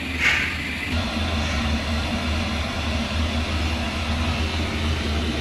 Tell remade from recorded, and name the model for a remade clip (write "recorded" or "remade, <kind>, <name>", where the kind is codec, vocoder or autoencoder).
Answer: recorded